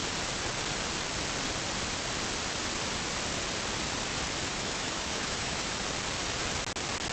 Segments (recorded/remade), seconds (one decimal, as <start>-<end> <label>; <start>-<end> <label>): 0.0-4.5 recorded; 4.5-5.7 remade; 5.7-7.1 recorded